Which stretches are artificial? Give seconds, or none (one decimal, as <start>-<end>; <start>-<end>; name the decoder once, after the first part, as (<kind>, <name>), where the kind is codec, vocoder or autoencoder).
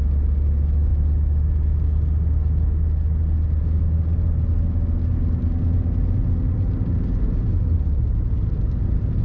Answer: none